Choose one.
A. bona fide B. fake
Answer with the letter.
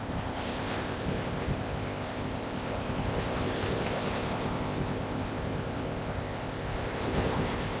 B